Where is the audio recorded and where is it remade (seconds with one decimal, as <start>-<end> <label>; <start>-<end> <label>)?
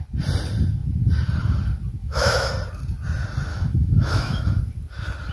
0.0-2.0 recorded; 2.0-2.5 remade; 2.5-3.5 recorded; 3.5-4.6 remade; 4.6-5.3 recorded